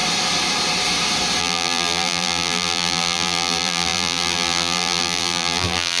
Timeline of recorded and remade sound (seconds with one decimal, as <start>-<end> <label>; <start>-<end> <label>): 0.0-1.4 recorded; 1.4-6.0 remade